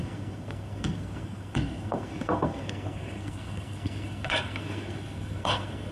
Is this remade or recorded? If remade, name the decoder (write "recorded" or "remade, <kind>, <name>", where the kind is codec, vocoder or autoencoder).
remade, codec, SNAC